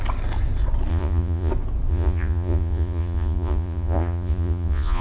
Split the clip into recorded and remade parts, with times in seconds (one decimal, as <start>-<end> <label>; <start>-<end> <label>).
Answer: 0.0-0.9 recorded; 0.9-1.5 remade; 1.5-1.9 recorded; 1.9-5.0 remade